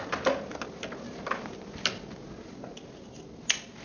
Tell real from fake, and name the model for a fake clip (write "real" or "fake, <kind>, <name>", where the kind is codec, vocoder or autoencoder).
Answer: real